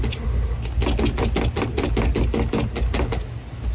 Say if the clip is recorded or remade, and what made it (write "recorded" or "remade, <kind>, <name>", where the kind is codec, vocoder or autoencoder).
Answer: recorded